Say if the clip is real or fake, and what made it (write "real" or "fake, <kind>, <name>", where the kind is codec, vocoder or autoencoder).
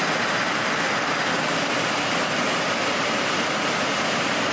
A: real